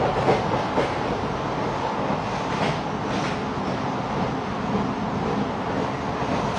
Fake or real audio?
real